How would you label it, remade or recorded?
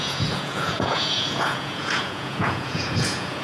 remade